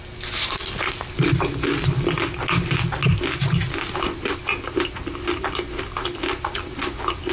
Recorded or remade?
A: recorded